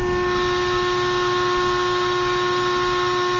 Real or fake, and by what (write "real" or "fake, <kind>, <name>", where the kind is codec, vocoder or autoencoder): real